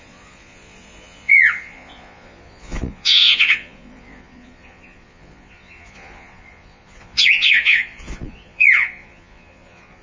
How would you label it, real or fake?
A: fake